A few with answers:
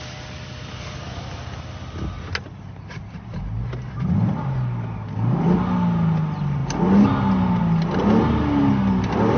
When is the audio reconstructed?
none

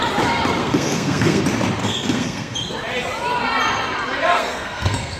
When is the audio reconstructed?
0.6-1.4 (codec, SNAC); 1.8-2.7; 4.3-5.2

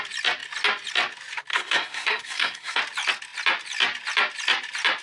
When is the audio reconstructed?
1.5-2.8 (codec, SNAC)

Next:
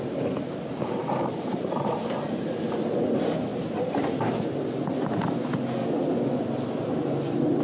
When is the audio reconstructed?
1.0-1.9 (vocoder, BigVGAN v2); 3.5-4.3; 5.8-6.4